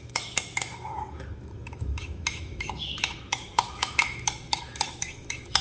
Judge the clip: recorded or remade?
remade